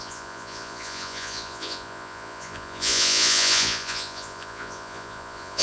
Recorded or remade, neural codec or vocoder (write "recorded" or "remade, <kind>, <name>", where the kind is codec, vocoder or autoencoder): remade, vocoder, Vocos